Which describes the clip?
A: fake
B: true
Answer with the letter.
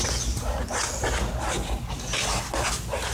B